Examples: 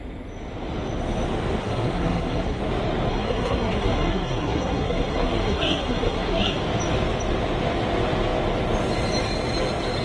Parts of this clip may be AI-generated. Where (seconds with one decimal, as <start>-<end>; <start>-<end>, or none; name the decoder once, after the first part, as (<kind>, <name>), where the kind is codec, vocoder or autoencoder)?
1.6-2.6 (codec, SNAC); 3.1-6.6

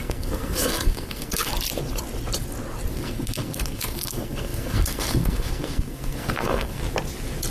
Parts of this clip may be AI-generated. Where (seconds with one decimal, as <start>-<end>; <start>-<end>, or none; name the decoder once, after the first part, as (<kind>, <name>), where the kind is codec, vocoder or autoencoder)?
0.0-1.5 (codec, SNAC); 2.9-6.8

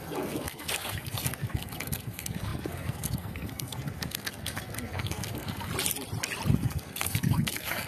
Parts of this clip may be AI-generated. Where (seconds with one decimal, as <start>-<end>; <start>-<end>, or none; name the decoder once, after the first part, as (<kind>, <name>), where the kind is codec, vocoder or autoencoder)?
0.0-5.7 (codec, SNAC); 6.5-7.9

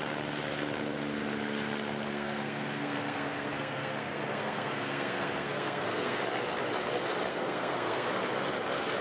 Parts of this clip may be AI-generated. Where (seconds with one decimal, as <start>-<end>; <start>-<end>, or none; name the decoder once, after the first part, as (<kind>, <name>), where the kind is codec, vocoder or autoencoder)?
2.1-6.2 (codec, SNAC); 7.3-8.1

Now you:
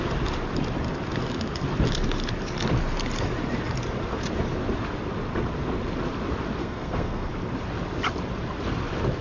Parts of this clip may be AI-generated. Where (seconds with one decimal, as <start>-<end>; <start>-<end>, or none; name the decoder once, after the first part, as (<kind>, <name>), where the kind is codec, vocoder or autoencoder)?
6.6-7.3 (codec, SNAC)

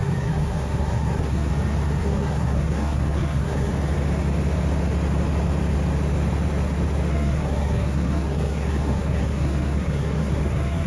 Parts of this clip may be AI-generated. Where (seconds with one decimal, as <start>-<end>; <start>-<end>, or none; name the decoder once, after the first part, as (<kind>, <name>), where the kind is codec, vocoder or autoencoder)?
0.0-1.5 (codec, SNAC); 2.0-3.7; 7.1-10.9